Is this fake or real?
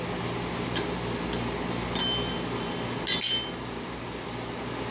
real